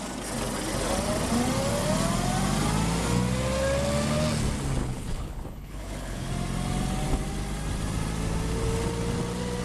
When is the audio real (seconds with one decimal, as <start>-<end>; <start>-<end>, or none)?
0.0-4.8; 6.3-9.6